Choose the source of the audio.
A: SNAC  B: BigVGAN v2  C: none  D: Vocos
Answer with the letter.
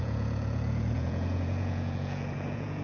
D